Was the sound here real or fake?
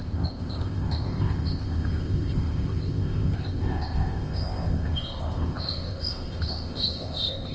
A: fake